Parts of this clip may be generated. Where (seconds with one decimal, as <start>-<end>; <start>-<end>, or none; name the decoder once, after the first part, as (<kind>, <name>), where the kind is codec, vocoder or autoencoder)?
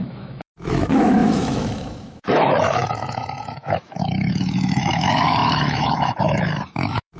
0.0-7.2 (autoencoder, DAC-VAE)